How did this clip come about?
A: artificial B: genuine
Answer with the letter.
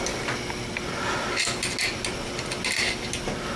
B